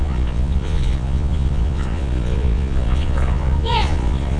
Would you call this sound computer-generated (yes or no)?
yes